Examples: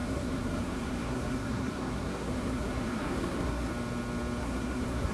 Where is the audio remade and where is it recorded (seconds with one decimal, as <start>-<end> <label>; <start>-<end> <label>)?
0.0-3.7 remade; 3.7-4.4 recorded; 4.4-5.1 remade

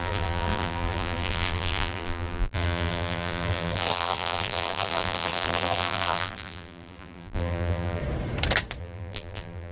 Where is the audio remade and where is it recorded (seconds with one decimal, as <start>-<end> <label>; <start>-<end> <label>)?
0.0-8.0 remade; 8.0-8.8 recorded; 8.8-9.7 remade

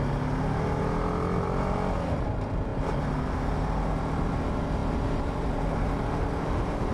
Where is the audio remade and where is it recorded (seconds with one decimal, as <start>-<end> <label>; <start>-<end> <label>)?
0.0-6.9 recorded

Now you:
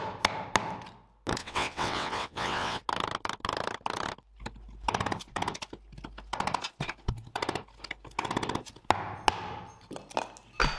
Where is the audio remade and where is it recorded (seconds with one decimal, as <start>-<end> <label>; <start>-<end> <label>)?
0.0-1.4 recorded; 1.4-2.8 remade; 2.8-10.8 recorded

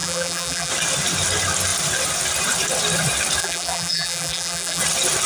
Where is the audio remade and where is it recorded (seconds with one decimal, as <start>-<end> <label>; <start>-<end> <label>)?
0.0-0.7 remade; 0.7-3.4 recorded; 3.4-4.8 remade; 4.8-5.3 recorded

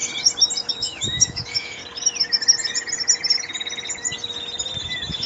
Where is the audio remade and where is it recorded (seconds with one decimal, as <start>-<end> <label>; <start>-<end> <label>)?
0.0-0.7 recorded; 0.7-1.8 remade; 1.8-4.8 recorded; 4.8-5.3 remade

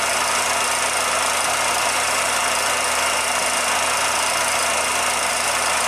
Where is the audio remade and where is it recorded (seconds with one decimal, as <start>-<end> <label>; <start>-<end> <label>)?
0.0-1.7 recorded; 1.7-2.4 remade; 2.4-5.3 recorded; 5.3-5.9 remade